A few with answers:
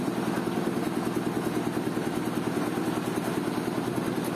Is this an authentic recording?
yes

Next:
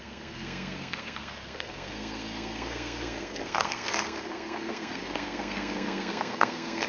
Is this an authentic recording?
no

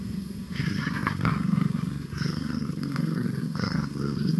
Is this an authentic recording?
no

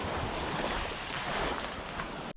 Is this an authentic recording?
yes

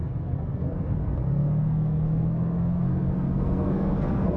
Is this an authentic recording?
no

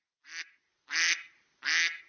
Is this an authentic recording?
yes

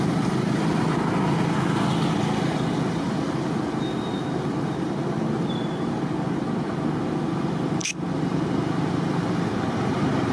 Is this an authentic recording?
yes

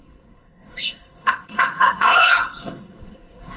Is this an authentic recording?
no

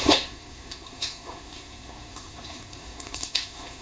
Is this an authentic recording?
no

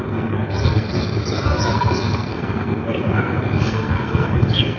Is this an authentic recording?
no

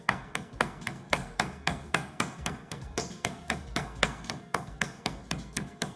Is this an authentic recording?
no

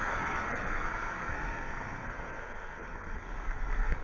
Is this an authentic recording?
no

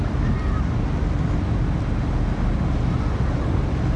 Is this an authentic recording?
yes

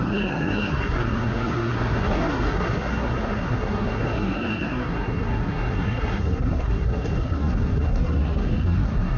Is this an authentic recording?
no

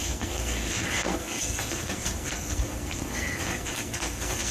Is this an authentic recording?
no